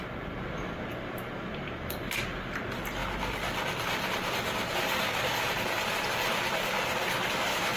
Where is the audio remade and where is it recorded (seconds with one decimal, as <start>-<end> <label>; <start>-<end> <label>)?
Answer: 0.0-7.8 recorded